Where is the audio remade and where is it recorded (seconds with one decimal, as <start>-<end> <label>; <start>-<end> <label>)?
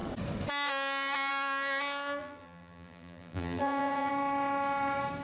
0.0-2.2 recorded; 2.2-4.1 remade; 4.1-5.2 recorded